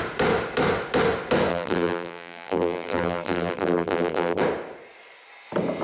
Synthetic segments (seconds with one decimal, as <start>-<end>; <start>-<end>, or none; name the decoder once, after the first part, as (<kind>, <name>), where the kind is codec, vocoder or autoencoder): 1.5-4.4 (vocoder, BigVGAN v2)